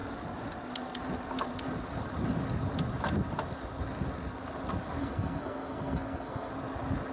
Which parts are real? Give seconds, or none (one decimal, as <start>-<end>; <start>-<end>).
0.0-5.0; 6.5-7.1